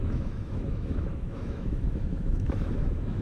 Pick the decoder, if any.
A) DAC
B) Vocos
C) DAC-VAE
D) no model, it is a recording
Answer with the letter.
C